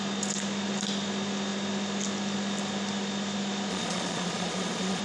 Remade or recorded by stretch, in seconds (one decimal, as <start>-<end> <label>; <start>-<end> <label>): 0.0-3.7 recorded; 3.7-5.0 remade